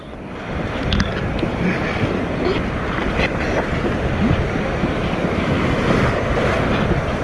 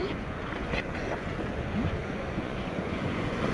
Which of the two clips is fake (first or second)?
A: second